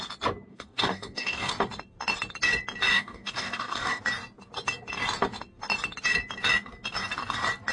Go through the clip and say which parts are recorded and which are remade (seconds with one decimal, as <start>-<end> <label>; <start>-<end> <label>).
0.0-0.5 recorded; 0.5-1.5 remade; 1.5-2.9 recorded; 2.9-4.0 remade; 4.0-7.7 recorded

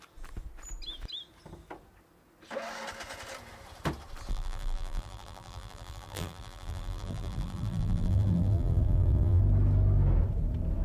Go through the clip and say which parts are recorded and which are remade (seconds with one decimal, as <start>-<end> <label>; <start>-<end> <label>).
0.0-4.3 recorded; 4.3-9.4 remade; 9.4-10.8 recorded

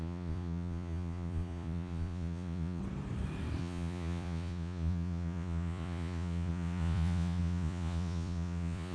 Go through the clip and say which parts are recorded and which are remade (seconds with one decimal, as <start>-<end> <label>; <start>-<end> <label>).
0.0-2.8 remade; 2.8-3.6 recorded; 3.6-8.9 remade

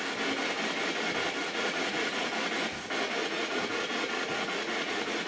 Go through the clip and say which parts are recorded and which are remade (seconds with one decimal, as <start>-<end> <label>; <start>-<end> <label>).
0.0-1.4 recorded; 1.4-2.3 remade; 2.3-3.2 recorded; 3.2-5.3 remade

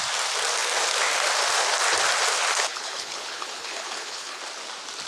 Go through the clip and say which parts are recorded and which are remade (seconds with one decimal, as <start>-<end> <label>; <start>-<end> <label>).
0.0-2.7 recorded; 2.7-4.4 remade; 4.4-5.1 recorded

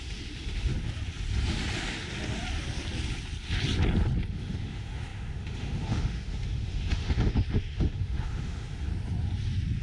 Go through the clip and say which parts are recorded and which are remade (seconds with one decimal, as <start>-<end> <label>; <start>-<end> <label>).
0.0-0.7 remade; 0.7-4.3 recorded; 4.3-8.9 remade; 8.9-9.8 recorded

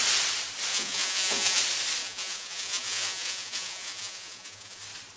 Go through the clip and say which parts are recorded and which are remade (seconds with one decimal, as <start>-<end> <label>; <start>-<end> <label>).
0.0-0.7 recorded; 0.7-1.6 remade; 1.6-2.0 recorded; 2.0-4.8 remade; 4.8-5.2 recorded

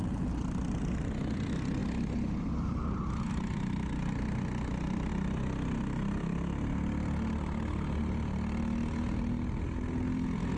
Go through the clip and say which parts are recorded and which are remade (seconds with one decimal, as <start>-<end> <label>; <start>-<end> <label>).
0.0-10.6 recorded